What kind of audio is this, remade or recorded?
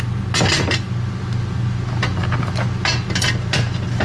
recorded